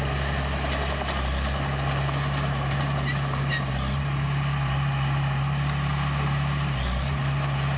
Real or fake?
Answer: real